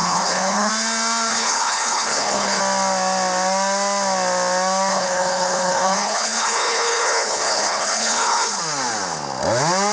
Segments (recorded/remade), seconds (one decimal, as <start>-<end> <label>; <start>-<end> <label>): 0.0-0.7 remade; 0.7-1.3 recorded; 1.3-2.6 remade; 2.6-4.9 recorded; 4.9-8.6 remade; 8.6-9.9 recorded